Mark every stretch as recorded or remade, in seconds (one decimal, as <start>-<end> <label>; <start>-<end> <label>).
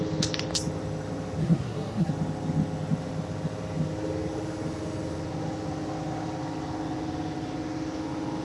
0.0-1.4 recorded; 1.4-2.1 remade; 2.1-8.4 recorded